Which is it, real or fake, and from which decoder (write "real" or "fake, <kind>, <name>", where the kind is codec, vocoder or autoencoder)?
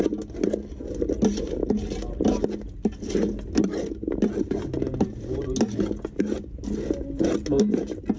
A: real